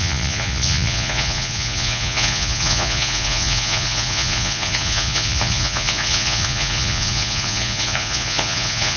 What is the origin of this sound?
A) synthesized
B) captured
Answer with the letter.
A